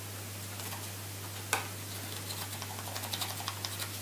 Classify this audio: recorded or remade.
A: recorded